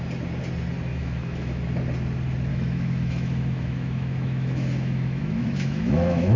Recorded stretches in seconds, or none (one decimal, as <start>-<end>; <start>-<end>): 0.0-0.9; 1.6-2.5